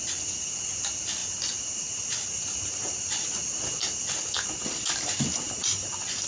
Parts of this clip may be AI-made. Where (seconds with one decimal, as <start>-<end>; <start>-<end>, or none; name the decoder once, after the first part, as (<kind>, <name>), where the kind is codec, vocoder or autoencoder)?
none

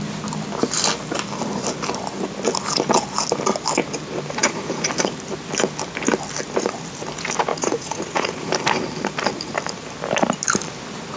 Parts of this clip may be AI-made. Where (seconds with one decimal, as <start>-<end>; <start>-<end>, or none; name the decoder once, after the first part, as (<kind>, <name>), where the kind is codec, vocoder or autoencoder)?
4.4-4.9 (vocoder, Vocos); 7.5-8.5

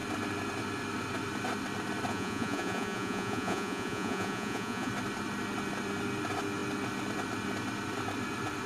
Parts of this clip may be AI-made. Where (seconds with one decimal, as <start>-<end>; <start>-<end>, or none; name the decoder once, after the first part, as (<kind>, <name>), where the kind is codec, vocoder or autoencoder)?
2.1-4.9 (vocoder, Vocos)

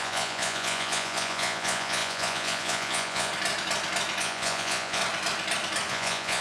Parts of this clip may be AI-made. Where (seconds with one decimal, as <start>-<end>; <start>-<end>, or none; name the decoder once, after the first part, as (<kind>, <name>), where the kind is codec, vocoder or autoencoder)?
0.0-3.3 (vocoder, Vocos); 4.2-5.0; 5.9-6.4

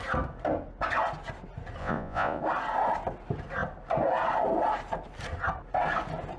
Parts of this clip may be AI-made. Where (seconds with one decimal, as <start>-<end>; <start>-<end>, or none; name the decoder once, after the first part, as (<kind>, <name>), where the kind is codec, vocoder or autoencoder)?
1.8-2.4 (vocoder, Vocos)